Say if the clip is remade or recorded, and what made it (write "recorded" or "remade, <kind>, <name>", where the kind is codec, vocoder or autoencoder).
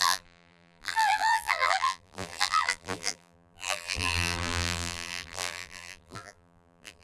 remade, vocoder, BigVGAN v2